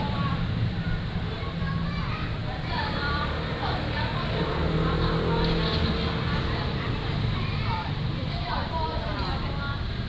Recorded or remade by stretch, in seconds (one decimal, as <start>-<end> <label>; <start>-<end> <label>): 0.0-4.1 remade; 4.1-5.9 recorded; 5.9-10.1 remade